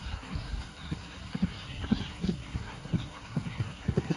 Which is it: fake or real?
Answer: fake